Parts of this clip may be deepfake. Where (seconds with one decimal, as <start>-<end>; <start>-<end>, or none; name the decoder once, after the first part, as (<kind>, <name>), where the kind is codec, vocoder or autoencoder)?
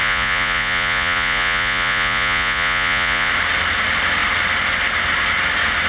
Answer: 0.0-3.3 (vocoder, Vocos)